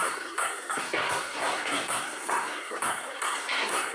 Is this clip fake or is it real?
fake